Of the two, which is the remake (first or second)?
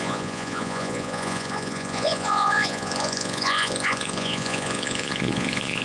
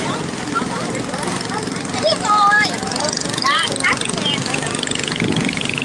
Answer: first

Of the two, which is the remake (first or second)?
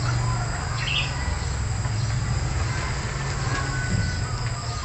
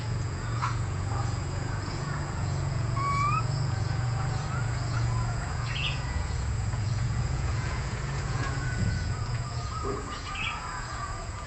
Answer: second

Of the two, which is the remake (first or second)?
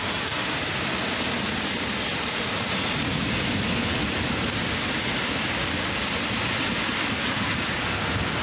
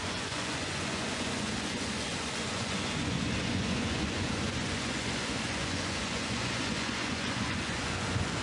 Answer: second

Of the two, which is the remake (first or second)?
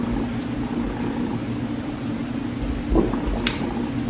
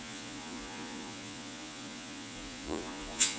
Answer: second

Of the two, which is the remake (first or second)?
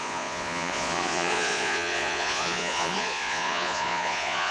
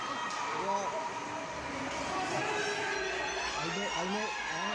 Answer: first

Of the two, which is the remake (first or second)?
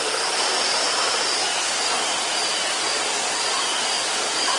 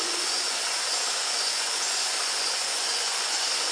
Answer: second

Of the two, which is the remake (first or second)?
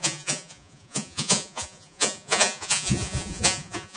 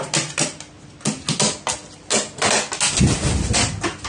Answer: first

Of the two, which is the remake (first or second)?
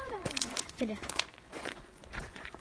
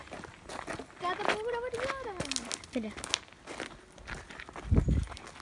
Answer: first